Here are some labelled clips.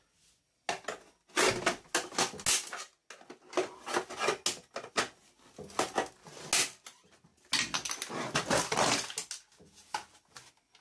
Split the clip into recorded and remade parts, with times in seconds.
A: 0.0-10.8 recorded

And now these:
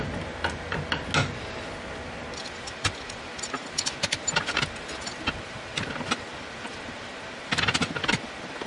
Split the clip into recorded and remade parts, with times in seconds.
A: 0.0-8.7 recorded